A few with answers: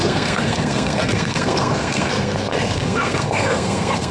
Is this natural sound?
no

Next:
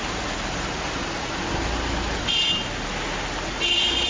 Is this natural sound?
yes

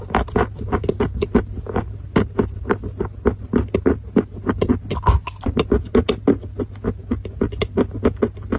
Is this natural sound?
yes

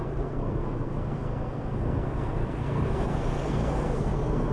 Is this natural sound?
no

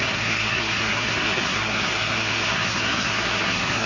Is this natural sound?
no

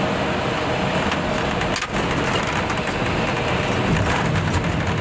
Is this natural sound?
yes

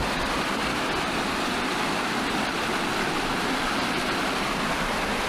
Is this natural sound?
yes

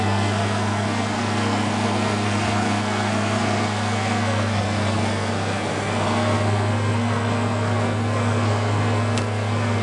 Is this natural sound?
no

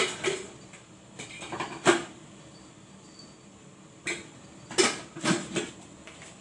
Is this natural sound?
yes